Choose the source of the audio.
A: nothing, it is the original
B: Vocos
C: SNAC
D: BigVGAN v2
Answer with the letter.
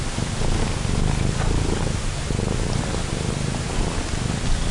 A